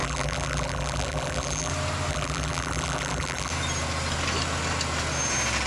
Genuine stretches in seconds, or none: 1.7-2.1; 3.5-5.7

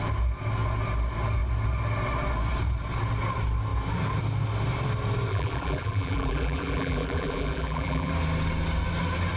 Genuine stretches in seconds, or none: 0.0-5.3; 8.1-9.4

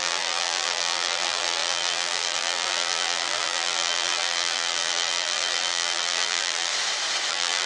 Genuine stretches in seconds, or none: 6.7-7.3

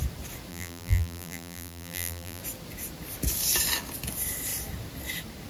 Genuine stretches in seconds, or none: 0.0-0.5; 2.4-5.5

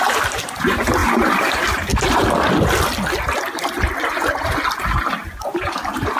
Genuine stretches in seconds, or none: 1.9-5.4